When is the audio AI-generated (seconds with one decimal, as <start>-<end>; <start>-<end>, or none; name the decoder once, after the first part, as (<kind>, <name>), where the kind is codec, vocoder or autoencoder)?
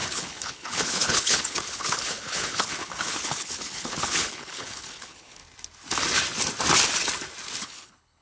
0.0-5.4 (codec, HILCodec); 7.6-8.2